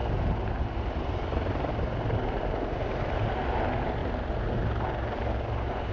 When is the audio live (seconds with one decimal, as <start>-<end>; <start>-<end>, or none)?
0.0-5.9